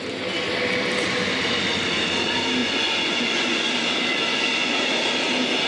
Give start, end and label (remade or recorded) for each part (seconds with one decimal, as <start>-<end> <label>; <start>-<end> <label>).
0.0-2.6 recorded; 2.6-3.7 remade; 3.7-4.3 recorded; 4.3-5.0 remade; 5.0-5.7 recorded